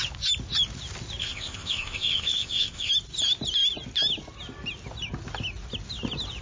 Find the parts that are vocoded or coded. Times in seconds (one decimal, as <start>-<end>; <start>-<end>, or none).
1.2-2.9